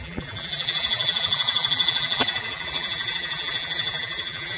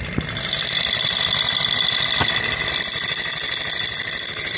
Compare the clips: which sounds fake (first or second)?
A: first